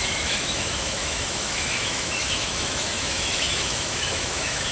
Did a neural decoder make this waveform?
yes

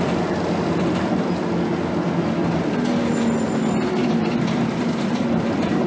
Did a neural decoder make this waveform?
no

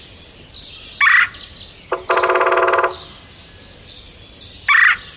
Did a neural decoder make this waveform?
no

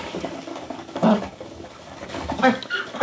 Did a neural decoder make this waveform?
yes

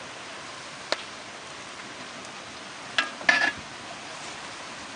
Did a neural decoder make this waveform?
no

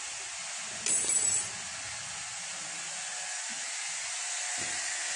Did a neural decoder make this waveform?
no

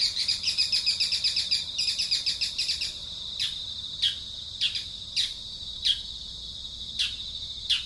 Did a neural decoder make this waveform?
no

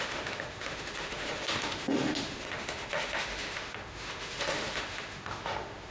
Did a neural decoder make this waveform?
yes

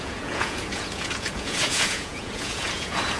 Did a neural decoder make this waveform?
yes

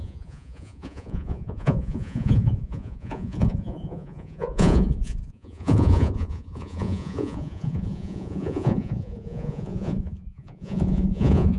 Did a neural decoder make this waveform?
yes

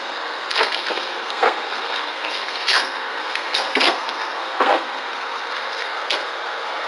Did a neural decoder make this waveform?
yes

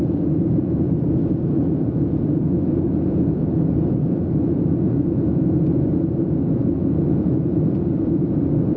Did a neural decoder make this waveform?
yes